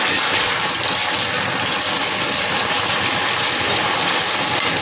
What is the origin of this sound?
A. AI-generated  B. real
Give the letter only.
B